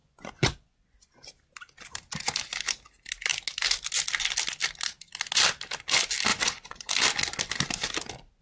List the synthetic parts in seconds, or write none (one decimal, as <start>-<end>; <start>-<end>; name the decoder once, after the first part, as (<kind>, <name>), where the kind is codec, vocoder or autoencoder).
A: 0.0-1.1 (vocoder, Vocos); 6.3-6.9